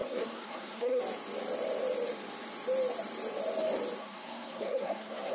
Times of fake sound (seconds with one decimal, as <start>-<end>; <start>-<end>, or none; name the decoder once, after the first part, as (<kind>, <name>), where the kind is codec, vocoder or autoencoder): 0.0-1.0 (codec, SNAC); 4.0-5.3